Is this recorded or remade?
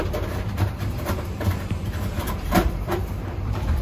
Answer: remade